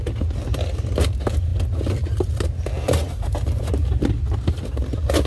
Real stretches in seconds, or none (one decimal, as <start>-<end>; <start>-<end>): 0.0-3.0; 3.6-5.3